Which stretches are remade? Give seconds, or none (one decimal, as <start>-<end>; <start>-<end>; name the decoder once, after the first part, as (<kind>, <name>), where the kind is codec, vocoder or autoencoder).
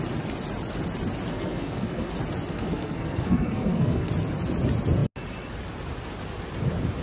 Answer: 1.3-2.1 (codec, SNAC); 2.5-4.1